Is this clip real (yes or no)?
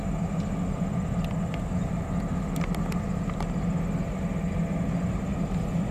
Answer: yes